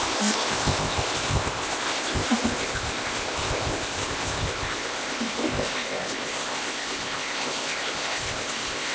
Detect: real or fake fake